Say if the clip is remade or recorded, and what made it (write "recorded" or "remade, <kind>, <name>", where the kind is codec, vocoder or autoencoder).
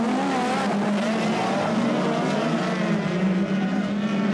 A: recorded